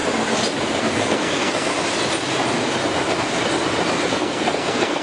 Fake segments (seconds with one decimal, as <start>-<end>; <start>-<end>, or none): 0.8-1.7; 4.1-5.0